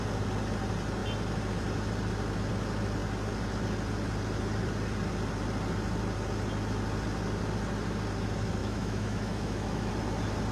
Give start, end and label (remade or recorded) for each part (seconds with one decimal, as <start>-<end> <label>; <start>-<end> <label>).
0.0-8.6 recorded; 8.6-9.9 remade; 9.9-10.5 recorded